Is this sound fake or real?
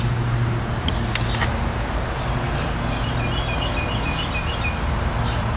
real